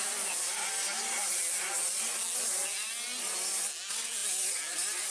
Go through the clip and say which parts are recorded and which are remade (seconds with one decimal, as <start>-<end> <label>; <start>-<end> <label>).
0.0-4.2 recorded; 4.2-5.1 remade